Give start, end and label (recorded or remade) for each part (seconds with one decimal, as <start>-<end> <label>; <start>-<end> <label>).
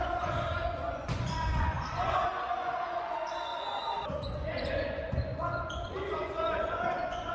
0.0-7.3 remade